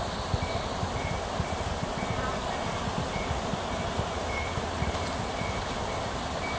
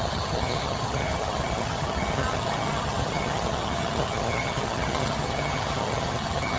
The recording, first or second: first